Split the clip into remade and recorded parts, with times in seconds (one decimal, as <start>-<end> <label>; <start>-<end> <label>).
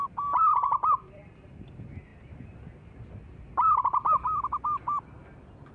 0.0-0.5 recorded; 0.5-1.5 remade; 1.5-5.7 recorded